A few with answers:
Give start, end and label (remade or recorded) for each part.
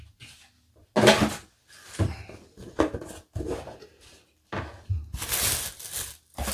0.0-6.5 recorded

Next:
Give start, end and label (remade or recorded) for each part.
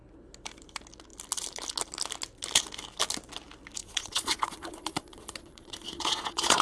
0.0-3.8 recorded; 3.8-6.6 remade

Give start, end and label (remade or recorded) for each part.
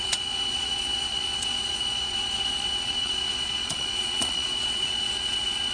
0.0-5.7 remade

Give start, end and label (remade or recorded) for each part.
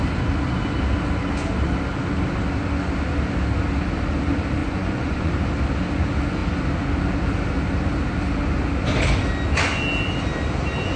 0.0-4.6 recorded; 4.6-5.3 remade; 5.3-11.0 recorded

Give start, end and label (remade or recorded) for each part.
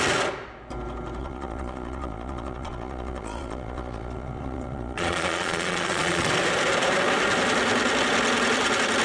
0.0-1.2 recorded; 1.2-6.3 remade; 6.3-9.0 recorded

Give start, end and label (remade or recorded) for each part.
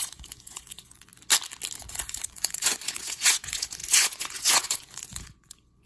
0.0-1.1 remade; 1.1-1.8 recorded; 1.8-5.9 remade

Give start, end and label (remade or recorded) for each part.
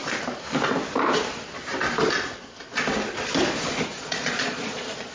0.0-3.9 recorded; 3.9-5.1 remade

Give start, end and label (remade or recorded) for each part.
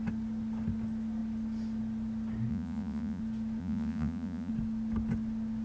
0.0-2.5 recorded; 2.5-3.2 remade; 3.2-3.6 recorded; 3.6-4.5 remade; 4.5-5.6 recorded